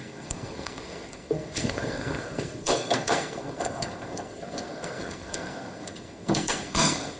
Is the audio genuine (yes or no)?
no